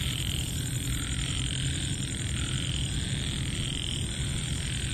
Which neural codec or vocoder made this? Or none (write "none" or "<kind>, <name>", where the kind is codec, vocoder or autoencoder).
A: none